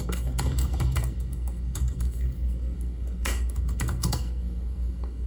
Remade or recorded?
remade